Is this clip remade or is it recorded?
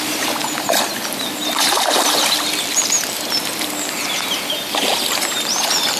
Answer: recorded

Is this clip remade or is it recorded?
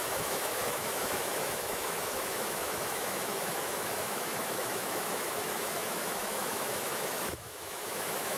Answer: remade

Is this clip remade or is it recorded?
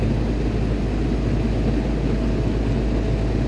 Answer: recorded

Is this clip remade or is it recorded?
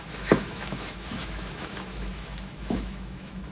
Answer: remade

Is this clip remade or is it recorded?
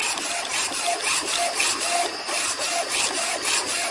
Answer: recorded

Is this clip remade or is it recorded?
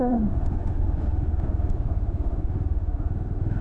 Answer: remade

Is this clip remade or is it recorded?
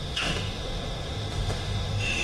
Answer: remade